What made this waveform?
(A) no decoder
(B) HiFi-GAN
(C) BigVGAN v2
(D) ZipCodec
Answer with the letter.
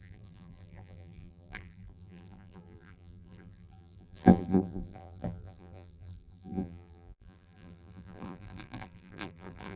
C